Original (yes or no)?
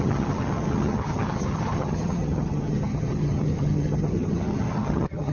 no